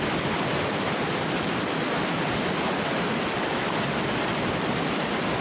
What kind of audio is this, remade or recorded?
recorded